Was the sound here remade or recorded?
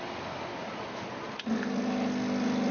recorded